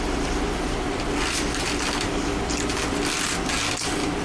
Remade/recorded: recorded